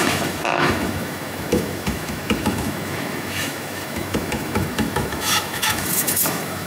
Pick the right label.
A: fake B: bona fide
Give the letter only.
A